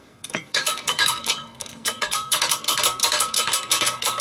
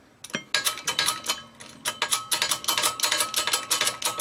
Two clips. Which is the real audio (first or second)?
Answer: second